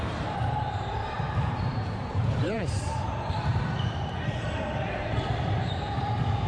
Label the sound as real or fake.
fake